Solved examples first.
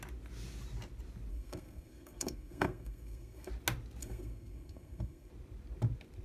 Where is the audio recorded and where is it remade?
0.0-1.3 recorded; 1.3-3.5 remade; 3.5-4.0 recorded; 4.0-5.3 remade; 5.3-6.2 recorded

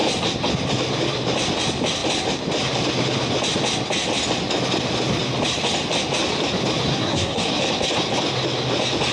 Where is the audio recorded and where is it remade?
0.0-6.9 recorded; 6.9-7.6 remade; 7.6-9.1 recorded